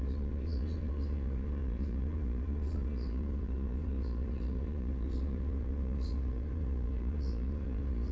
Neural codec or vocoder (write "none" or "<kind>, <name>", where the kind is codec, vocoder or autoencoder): vocoder, Vocos